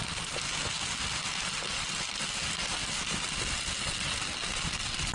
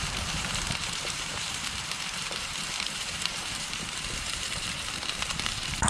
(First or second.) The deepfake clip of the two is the second